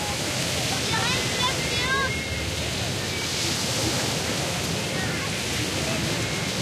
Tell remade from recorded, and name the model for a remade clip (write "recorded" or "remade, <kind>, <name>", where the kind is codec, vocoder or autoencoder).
recorded